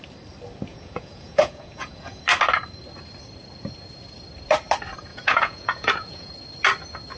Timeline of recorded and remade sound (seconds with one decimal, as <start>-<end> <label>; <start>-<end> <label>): 0.0-0.7 recorded; 0.7-2.2 remade; 2.2-5.1 recorded; 5.1-6.3 remade; 6.3-7.2 recorded